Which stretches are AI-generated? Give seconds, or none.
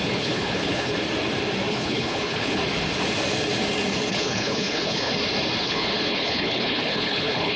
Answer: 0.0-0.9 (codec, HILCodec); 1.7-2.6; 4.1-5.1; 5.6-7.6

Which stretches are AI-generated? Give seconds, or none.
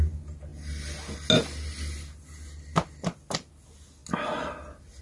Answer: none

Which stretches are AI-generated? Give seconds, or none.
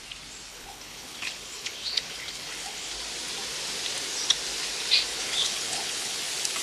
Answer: 0.5-2.9 (codec, HILCodec); 5.1-6.1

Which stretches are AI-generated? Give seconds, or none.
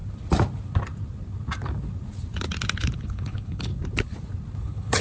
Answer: 3.0-3.7 (codec, HILCodec); 4.6-5.0